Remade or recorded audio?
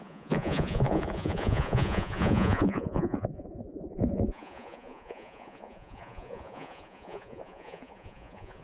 remade